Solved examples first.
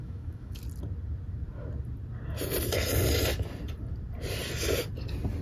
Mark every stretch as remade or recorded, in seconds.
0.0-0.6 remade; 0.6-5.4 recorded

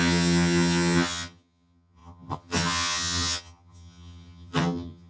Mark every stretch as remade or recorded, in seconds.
0.0-5.1 remade

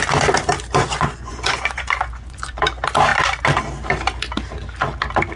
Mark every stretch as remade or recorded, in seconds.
0.0-0.8 recorded; 0.8-2.6 remade; 2.6-5.4 recorded

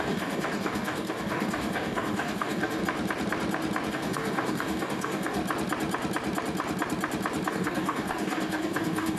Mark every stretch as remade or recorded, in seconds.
0.0-2.8 remade; 2.8-3.9 recorded; 3.9-5.4 remade; 5.4-7.5 recorded; 7.5-9.2 remade